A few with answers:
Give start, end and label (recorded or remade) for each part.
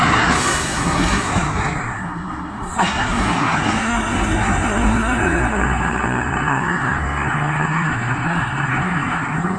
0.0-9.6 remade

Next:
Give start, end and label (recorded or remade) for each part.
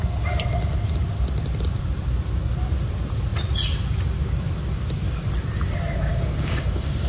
0.0-6.1 recorded; 6.1-7.1 remade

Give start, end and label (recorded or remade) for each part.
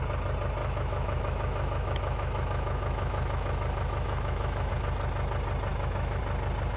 0.0-0.6 recorded; 0.6-4.7 remade; 4.7-5.7 recorded; 5.7-6.2 remade; 6.2-6.8 recorded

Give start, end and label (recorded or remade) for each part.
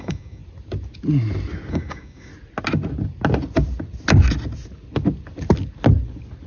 0.0-0.4 remade; 0.4-1.7 recorded; 1.7-2.3 remade; 2.3-6.5 recorded